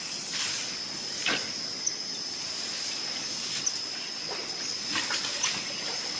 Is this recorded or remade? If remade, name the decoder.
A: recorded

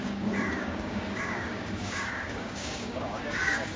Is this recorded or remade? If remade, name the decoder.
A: remade, codec, DAC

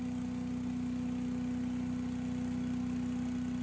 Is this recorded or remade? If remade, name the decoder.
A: recorded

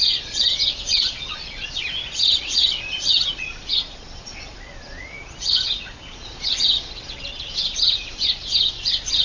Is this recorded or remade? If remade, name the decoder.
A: remade, vocoder, Vocos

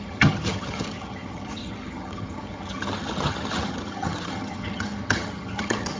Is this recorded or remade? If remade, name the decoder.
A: remade, vocoder, HiFi-GAN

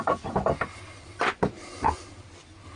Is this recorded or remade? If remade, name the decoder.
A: recorded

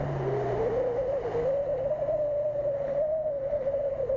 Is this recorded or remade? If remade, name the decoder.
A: recorded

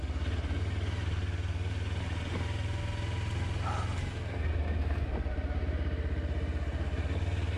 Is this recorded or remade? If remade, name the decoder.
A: recorded